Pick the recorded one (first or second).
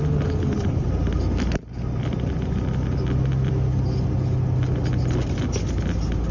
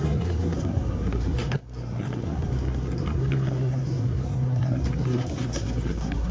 first